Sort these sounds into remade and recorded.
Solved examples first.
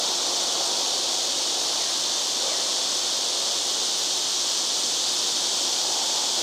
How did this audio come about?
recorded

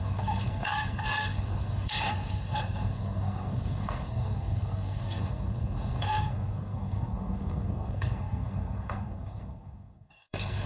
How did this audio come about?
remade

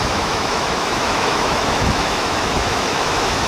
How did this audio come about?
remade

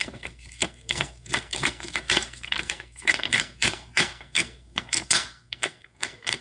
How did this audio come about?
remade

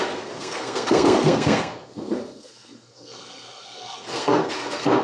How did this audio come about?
remade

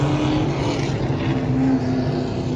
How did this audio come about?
recorded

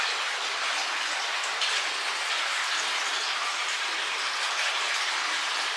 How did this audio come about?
recorded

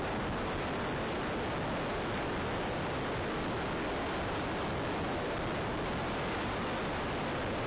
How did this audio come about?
recorded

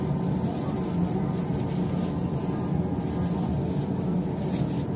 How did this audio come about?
recorded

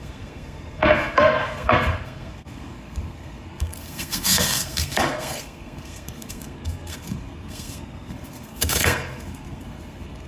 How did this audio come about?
remade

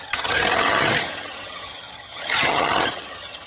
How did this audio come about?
remade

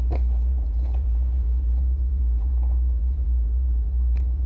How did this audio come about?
remade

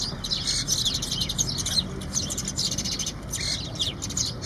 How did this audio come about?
recorded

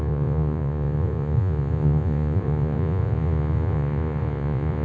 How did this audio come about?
remade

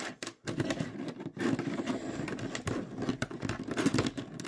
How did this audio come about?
recorded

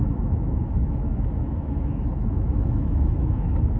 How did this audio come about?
remade